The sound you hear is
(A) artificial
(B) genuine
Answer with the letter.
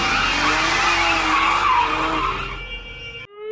B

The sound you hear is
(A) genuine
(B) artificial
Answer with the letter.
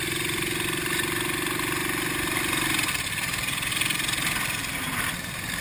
A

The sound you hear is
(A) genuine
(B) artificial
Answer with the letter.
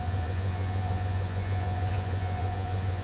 B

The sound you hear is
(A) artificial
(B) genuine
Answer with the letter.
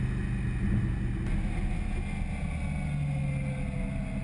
B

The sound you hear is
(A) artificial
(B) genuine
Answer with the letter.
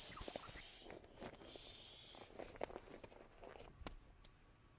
B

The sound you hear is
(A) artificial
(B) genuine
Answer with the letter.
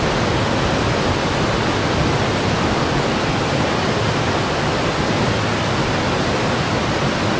B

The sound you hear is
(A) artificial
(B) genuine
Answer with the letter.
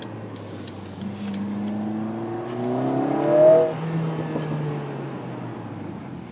B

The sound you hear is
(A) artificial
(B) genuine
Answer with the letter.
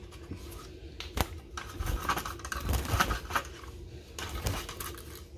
B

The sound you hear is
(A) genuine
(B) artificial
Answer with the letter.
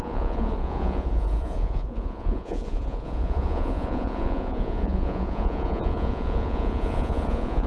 B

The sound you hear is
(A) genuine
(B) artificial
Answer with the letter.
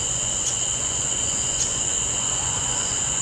B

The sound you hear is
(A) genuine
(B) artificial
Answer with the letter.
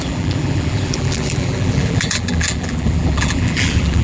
B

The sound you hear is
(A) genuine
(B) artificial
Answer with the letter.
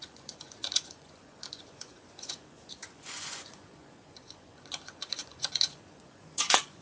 B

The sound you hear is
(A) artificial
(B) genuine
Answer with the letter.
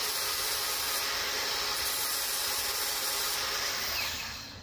A